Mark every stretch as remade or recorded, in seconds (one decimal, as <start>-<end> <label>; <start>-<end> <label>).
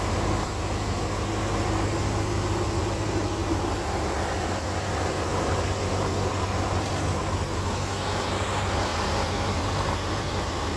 0.0-10.8 recorded